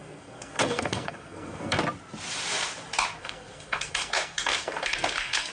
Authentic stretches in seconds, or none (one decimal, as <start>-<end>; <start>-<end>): 1.8-3.2